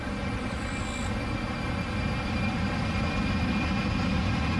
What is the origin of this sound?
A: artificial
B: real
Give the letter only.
B